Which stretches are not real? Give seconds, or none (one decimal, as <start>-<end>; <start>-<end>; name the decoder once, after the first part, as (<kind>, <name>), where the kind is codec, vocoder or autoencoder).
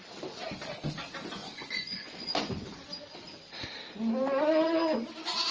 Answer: 1.4-2.5 (vocoder, Vocos)